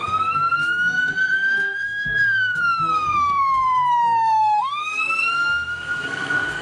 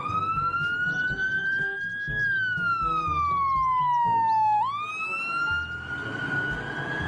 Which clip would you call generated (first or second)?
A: first